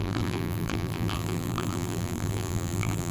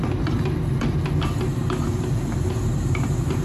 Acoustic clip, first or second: second